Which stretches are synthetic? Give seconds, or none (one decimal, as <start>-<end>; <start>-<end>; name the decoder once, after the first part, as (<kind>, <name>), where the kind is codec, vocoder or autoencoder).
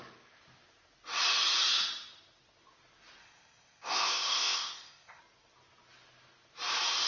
3.2-5.2 (codec, ZipCodec)